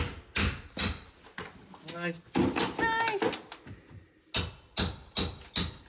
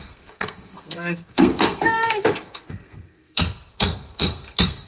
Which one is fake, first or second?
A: second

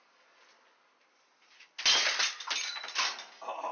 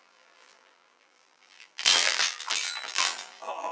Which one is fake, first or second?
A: second